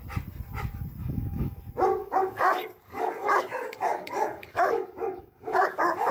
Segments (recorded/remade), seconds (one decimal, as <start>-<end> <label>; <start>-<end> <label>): 0.0-1.0 recorded; 1.0-1.6 remade; 1.6-2.0 recorded; 2.0-6.1 remade